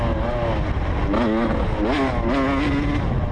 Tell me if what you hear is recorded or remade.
recorded